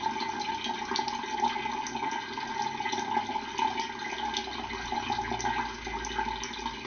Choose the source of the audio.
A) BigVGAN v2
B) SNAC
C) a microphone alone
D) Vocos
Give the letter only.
C